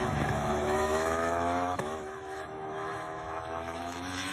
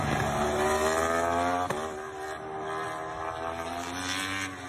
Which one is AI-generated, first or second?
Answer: first